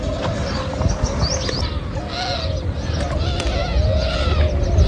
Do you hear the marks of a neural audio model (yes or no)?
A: no